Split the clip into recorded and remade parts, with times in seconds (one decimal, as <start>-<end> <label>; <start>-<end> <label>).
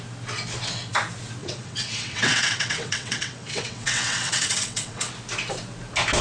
0.0-1.4 recorded; 1.4-5.1 remade; 5.1-6.2 recorded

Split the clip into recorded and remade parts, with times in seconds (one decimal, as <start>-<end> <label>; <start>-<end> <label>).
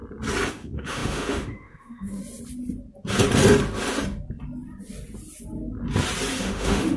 0.0-0.5 recorded; 0.5-2.2 remade; 2.2-6.4 recorded; 6.4-7.0 remade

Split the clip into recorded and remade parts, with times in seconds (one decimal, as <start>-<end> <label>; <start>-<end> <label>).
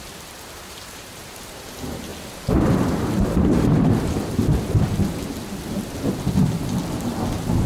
0.0-2.1 remade; 2.1-2.6 recorded; 2.6-4.4 remade; 4.4-7.7 recorded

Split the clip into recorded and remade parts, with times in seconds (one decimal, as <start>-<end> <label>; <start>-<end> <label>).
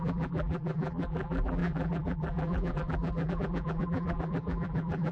0.0-5.1 remade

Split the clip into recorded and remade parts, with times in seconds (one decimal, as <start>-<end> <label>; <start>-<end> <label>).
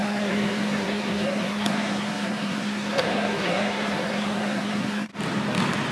0.0-5.1 remade; 5.1-5.9 recorded